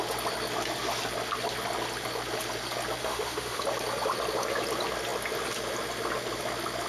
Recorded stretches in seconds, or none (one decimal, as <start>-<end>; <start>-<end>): 0.0-3.0; 3.6-6.9